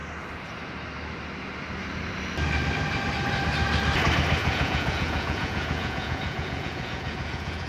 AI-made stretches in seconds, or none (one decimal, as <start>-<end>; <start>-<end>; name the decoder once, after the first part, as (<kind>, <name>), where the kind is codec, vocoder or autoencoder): 4.4-7.7 (vocoder, Vocos)